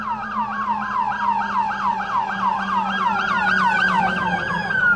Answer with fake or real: real